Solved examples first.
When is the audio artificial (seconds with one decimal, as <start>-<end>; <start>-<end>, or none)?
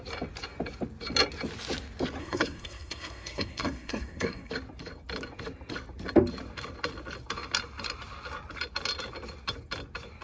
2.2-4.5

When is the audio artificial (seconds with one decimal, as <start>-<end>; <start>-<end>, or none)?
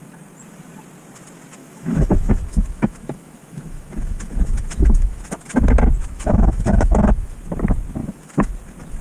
1.6-5.2; 6.0-7.4; 8.0-8.5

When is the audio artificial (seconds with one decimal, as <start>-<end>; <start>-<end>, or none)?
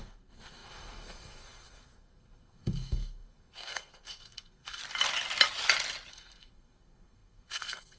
0.0-4.8; 6.1-8.0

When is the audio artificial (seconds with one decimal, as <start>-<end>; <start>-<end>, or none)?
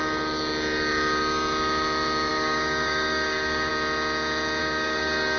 2.3-3.7; 4.6-5.4